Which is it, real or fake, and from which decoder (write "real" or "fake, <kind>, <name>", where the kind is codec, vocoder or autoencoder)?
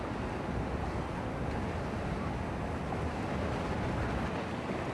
real